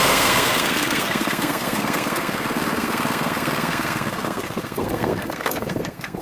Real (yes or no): no